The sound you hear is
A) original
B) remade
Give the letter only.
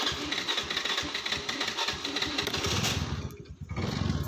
A